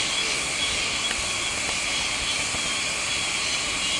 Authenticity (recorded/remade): recorded